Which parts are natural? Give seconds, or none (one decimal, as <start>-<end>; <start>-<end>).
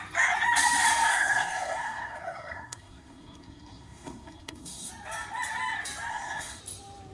0.0-1.1; 4.9-6.1; 6.6-7.1